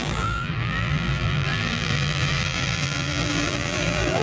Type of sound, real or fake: fake